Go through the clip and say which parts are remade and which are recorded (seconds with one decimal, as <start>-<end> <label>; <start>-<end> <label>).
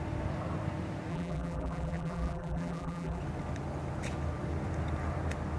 0.0-1.1 recorded; 1.1-3.2 remade; 3.2-5.6 recorded